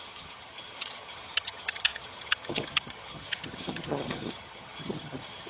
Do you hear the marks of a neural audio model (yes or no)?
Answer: yes